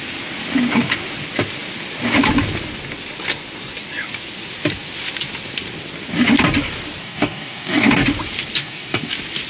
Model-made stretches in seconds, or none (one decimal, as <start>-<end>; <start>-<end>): 7.0-7.9; 8.6-9.1